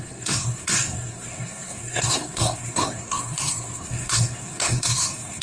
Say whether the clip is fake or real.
fake